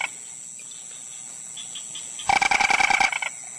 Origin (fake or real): real